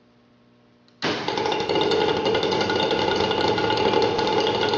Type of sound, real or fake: real